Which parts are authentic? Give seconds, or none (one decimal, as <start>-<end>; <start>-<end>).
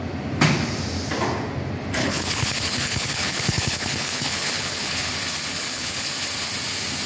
0.0-2.0; 5.1-5.5; 6.1-7.1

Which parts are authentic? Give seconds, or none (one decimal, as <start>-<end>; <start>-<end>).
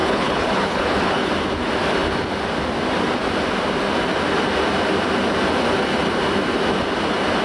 1.3-7.4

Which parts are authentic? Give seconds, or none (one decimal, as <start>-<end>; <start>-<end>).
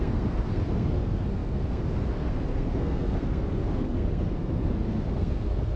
none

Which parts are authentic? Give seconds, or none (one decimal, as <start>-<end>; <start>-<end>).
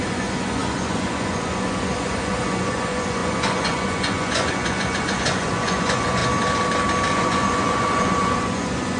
6.2-7.1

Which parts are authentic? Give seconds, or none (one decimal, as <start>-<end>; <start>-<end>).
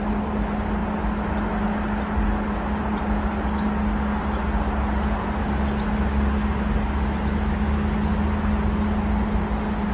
0.0-9.9